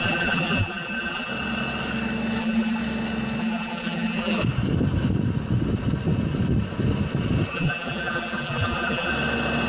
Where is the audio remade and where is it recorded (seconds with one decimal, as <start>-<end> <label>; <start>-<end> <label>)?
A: 0.0-1.3 remade; 1.3-2.4 recorded; 2.4-2.8 remade; 2.8-3.4 recorded; 3.4-4.4 remade; 4.4-7.5 recorded; 7.5-9.1 remade; 9.1-9.7 recorded

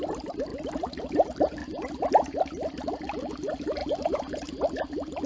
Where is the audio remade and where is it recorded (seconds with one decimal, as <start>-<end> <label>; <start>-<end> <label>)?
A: 0.0-1.6 remade; 1.6-2.1 recorded; 2.1-5.3 remade